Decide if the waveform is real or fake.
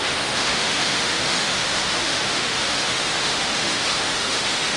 fake